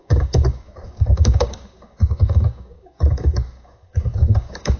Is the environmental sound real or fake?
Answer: fake